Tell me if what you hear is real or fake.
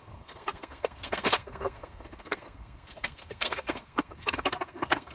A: fake